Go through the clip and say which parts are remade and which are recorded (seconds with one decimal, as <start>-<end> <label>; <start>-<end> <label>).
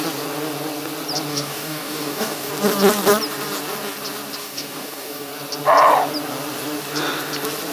0.0-1.3 recorded; 1.3-2.5 remade; 2.5-4.4 recorded; 4.4-5.3 remade; 5.3-7.7 recorded